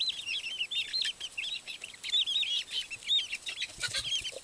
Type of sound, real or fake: real